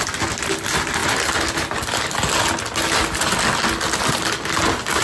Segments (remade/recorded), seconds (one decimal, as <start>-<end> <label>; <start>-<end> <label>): 0.0-5.0 recorded